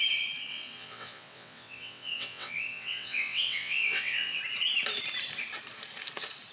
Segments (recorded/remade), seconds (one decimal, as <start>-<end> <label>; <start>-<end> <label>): 0.0-0.5 recorded; 0.5-4.4 remade; 4.4-6.5 recorded